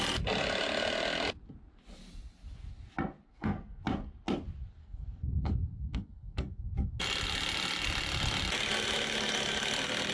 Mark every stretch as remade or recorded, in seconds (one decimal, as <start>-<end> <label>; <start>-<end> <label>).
0.0-3.3 recorded; 3.3-3.8 remade; 3.8-4.8 recorded; 4.8-7.0 remade; 7.0-10.1 recorded